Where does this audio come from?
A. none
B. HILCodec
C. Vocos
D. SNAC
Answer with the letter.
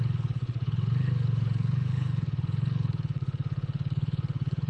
B